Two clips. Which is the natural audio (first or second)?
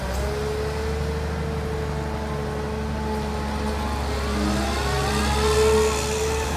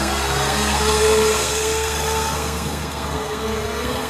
first